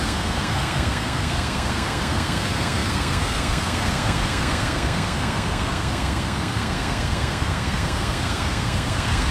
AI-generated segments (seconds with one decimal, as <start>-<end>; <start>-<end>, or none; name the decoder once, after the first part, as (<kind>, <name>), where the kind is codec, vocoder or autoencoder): 0.0-9.3 (codec, SNAC)